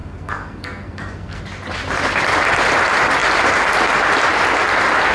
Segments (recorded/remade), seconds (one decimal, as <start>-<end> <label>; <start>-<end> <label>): 0.0-1.4 remade; 1.4-5.1 recorded